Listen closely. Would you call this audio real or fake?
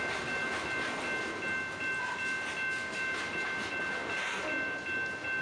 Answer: real